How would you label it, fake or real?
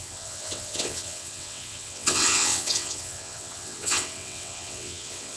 fake